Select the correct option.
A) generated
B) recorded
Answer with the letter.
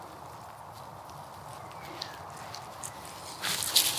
B